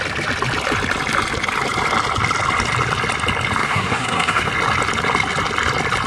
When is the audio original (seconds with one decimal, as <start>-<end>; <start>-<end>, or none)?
0.0-3.6; 4.5-6.1